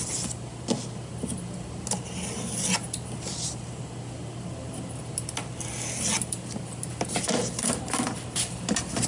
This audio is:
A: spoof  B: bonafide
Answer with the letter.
B